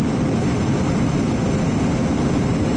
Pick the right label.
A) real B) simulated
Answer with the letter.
A